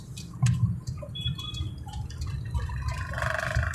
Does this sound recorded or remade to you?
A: remade